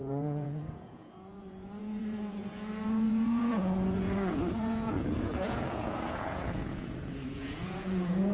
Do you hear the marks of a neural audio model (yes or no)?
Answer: yes